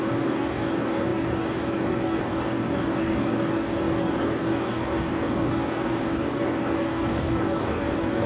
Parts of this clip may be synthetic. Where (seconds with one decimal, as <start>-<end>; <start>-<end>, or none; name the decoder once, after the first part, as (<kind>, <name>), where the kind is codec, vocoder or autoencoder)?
0.0-8.3 (codec, DAC)